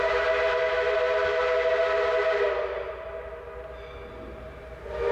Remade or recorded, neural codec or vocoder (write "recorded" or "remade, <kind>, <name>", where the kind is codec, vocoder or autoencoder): recorded